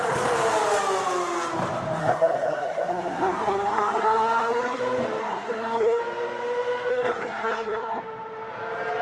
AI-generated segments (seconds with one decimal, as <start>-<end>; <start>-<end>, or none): 2.0-4.8; 5.2-6.0; 6.9-8.0